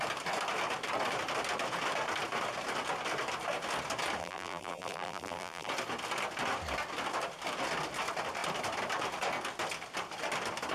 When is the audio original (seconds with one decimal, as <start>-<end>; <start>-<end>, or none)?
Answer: 0.0-4.2; 5.7-10.7